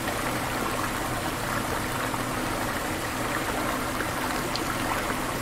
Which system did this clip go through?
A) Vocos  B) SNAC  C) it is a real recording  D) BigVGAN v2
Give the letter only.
C